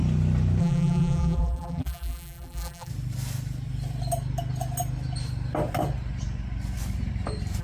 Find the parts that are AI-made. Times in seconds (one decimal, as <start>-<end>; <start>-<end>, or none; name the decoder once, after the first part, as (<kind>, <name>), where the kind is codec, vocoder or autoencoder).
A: 0.6-2.9 (vocoder, BigVGAN v2)